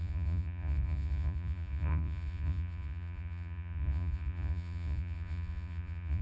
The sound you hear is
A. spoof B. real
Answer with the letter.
A